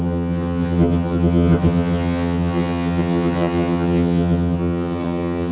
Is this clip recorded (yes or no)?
no